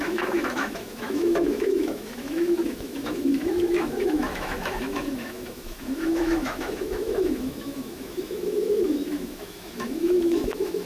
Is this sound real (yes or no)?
no